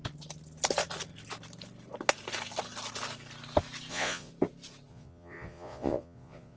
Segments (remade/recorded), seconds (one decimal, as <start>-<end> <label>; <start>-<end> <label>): 0.0-3.9 recorded; 3.9-4.3 remade; 4.3-4.9 recorded; 4.9-6.6 remade